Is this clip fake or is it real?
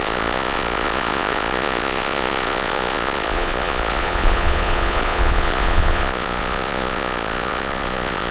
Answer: fake